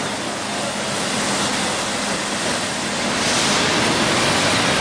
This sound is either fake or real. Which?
real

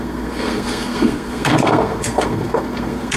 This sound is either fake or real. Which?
fake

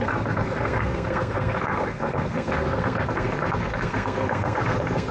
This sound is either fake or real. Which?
fake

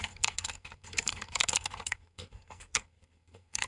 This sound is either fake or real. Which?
fake